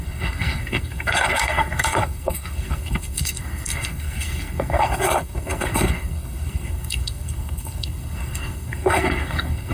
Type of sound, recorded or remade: remade